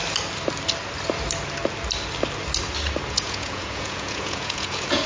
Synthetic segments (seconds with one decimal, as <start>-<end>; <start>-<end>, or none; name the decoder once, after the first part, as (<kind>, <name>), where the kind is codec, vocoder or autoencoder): 3.1-5.1 (vocoder, Vocos)